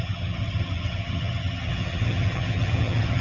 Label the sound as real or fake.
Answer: fake